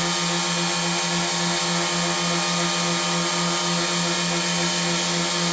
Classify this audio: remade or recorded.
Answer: recorded